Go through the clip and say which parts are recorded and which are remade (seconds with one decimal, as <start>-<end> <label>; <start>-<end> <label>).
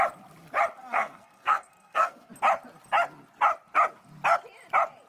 0.0-0.8 recorded; 0.8-2.3 remade; 2.3-5.1 recorded